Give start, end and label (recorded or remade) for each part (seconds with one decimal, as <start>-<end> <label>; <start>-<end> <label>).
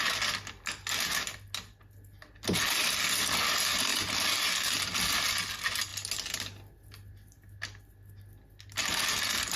0.0-9.6 recorded